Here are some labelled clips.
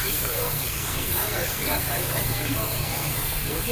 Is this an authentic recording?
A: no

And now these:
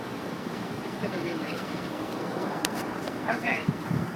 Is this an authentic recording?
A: no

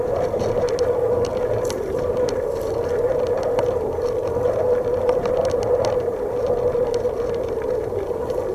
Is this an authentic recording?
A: yes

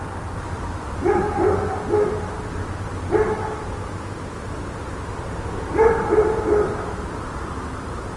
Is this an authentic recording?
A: yes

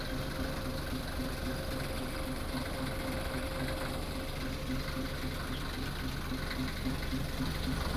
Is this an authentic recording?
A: yes